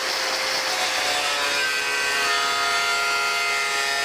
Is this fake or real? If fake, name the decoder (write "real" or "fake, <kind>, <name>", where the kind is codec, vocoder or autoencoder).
real